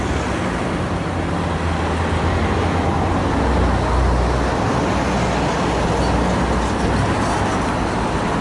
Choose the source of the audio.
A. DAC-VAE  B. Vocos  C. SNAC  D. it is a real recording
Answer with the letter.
D